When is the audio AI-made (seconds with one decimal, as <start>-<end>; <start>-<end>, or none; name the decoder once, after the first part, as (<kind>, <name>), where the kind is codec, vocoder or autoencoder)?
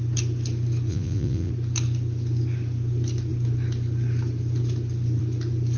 0.9-1.5 (vocoder, Vocos)